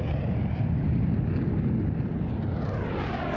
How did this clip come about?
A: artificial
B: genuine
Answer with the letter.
B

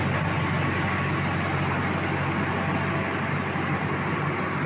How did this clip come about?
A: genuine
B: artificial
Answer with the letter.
A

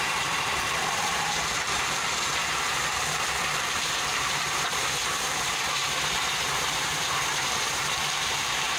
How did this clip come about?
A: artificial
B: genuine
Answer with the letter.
A